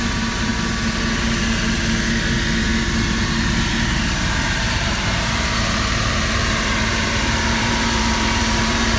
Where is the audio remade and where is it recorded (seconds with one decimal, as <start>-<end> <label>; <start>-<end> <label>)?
0.0-0.5 remade; 0.5-4.4 recorded; 4.4-9.0 remade

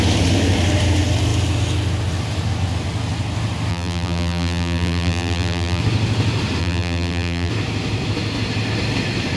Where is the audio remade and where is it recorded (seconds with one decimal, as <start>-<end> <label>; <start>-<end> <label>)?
0.0-3.7 recorded; 3.7-5.8 remade; 5.8-6.6 recorded; 6.6-7.5 remade; 7.5-9.4 recorded

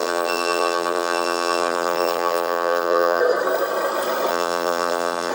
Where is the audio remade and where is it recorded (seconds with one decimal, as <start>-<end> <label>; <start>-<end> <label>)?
0.0-3.2 remade; 3.2-4.3 recorded; 4.3-5.3 remade

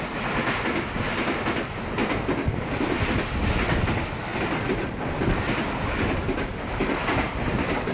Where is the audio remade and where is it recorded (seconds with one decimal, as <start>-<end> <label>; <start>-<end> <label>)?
0.0-2.0 recorded; 2.0-3.2 remade; 3.2-4.3 recorded; 4.3-5.3 remade; 5.3-6.2 recorded; 6.2-7.4 remade; 7.4-7.9 recorded

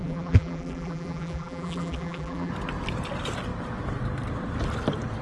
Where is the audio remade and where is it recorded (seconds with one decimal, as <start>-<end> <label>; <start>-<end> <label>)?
0.0-2.5 remade; 2.5-5.2 recorded

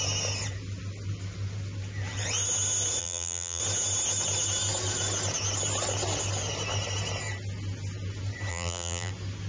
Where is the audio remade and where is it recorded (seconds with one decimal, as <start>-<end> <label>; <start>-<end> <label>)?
0.0-3.0 recorded; 3.0-3.6 remade; 3.6-8.5 recorded; 8.5-9.1 remade; 9.1-9.5 recorded

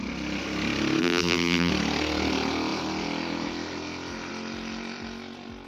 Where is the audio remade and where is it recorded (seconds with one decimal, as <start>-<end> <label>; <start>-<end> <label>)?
0.0-1.0 recorded; 1.0-1.7 remade; 1.7-5.7 recorded

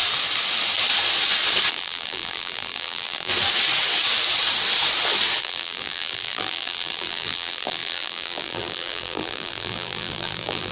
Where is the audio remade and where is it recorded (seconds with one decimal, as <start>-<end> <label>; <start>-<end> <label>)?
0.0-1.7 recorded; 1.7-3.3 remade; 3.3-5.4 recorded; 5.4-10.7 remade